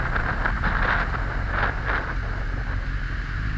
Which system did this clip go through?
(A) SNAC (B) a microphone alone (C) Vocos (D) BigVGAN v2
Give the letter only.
B